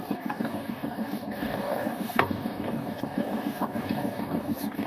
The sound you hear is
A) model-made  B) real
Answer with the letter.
A